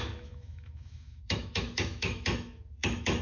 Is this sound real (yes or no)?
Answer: no